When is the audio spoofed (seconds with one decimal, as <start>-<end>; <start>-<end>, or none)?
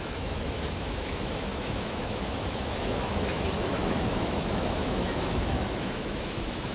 0.0-6.7